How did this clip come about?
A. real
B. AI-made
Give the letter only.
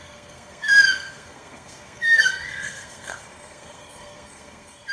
B